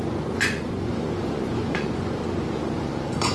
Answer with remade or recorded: remade